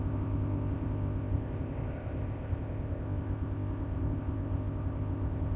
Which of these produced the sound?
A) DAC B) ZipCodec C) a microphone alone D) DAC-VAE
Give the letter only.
B